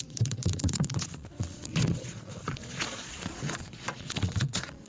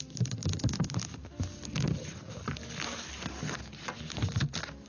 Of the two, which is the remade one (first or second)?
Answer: first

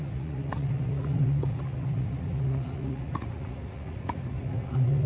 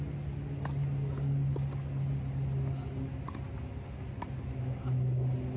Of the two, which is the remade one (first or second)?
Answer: first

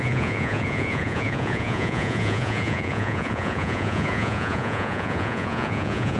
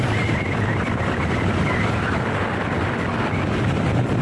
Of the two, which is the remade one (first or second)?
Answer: first